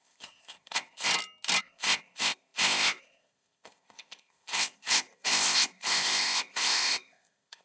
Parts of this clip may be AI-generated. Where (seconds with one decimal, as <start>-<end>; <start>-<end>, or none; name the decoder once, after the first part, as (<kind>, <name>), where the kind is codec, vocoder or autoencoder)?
0.0-1.1 (codec, ZipCodec); 1.6-7.6